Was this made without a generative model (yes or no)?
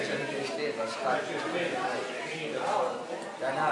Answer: yes